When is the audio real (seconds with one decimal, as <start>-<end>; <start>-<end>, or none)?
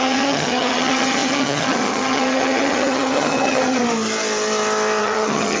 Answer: 3.8-5.0